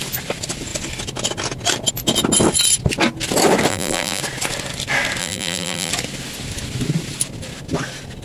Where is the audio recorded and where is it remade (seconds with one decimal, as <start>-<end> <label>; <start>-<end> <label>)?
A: 0.0-3.7 recorded; 3.7-4.2 remade; 4.2-5.2 recorded; 5.2-5.9 remade; 5.9-8.2 recorded